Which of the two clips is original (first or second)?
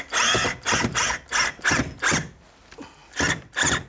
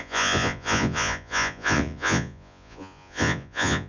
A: first